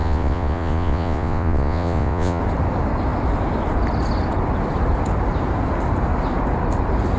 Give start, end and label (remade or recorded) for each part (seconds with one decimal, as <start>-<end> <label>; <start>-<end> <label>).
0.0-2.4 remade; 2.4-7.2 recorded

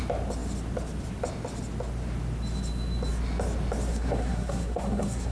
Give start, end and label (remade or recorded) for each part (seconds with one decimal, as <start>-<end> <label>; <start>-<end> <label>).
0.0-3.9 recorded; 3.9-5.3 remade

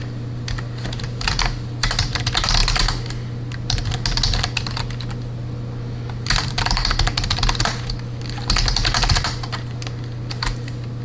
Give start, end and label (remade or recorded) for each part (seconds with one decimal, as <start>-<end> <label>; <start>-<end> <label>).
0.0-11.0 recorded

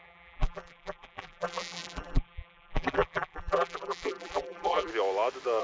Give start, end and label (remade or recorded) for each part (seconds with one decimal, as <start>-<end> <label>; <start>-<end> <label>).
0.0-4.9 remade; 4.9-5.6 recorded